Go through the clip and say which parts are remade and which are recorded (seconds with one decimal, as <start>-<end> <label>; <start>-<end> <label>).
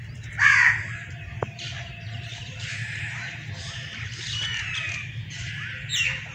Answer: 0.0-1.7 recorded; 1.7-3.3 remade; 3.3-6.3 recorded